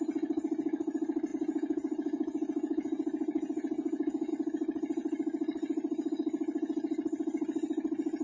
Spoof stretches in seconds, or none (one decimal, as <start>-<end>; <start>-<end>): 1.3-4.3